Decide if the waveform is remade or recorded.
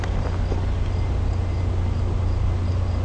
recorded